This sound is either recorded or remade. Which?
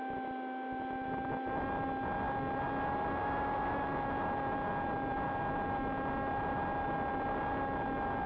recorded